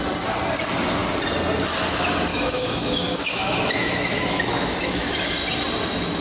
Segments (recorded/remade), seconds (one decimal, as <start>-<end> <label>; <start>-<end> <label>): 0.0-2.3 recorded; 2.3-5.2 remade; 5.2-6.2 recorded